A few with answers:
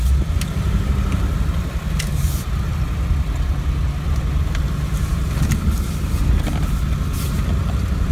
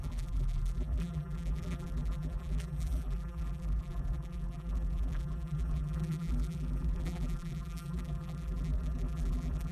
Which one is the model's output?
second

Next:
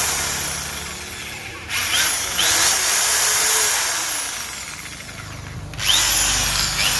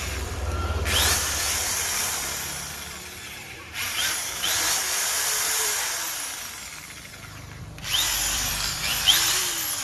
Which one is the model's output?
second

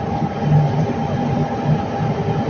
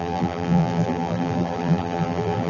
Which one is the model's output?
second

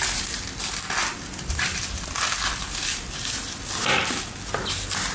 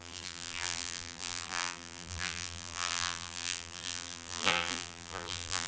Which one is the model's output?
second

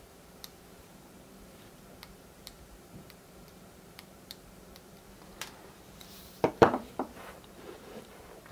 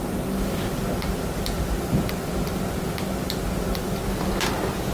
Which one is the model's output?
first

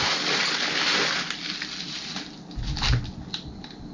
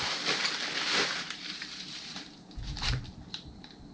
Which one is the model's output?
second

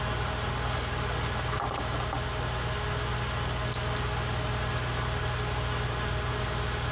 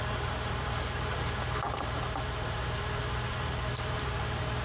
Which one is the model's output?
second